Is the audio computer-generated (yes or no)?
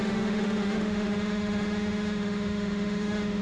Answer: yes